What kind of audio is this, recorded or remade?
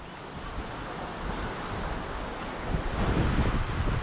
recorded